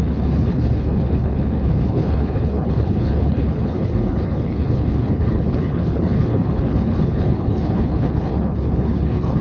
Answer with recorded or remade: remade